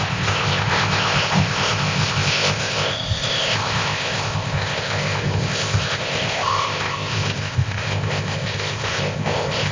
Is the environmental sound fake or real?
fake